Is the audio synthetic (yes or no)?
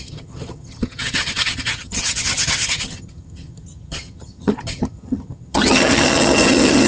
yes